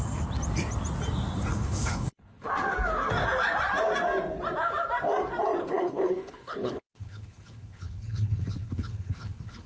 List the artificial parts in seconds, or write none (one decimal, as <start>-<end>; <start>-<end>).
1.5-2.5; 5.6-9.7